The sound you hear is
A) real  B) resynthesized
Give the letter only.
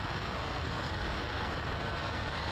B